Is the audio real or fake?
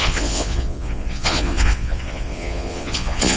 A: fake